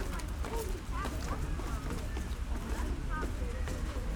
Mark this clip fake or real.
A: real